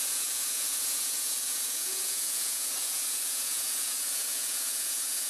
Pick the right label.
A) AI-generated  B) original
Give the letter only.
A